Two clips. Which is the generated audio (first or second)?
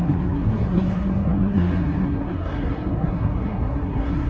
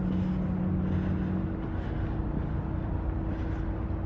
first